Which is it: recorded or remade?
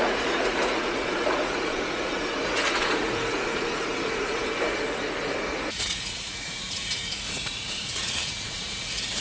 remade